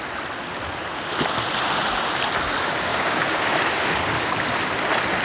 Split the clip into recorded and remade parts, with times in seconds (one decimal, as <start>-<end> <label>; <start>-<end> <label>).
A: 0.0-2.9 recorded; 2.9-3.5 remade; 3.5-5.2 recorded